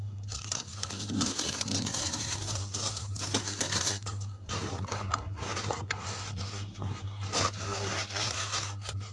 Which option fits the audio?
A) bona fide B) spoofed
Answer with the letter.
B